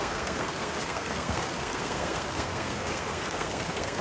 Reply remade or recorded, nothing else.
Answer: remade